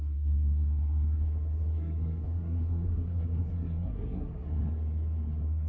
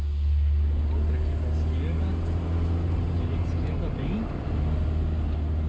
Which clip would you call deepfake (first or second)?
first